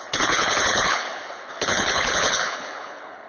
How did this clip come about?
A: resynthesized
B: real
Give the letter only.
A